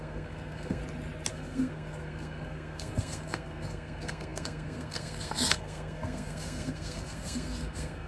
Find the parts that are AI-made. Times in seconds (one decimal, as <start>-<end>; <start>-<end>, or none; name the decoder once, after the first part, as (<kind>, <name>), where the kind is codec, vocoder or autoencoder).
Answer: 0.0-0.8 (codec, SNAC); 1.3-8.1